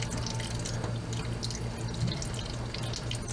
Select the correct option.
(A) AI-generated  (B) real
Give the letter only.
B